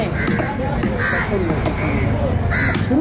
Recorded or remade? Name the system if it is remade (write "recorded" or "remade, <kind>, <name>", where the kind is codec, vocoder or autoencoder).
recorded